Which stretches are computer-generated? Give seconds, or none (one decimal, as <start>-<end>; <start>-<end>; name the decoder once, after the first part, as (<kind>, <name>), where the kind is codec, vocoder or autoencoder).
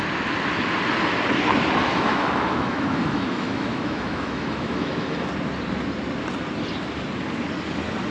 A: 1.9-5.3 (autoencoder, DAC-VAE)